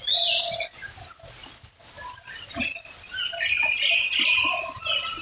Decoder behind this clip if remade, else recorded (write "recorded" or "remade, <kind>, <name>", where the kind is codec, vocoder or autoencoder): recorded